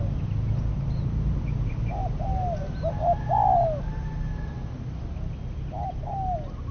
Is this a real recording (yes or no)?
yes